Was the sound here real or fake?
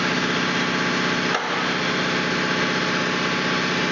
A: real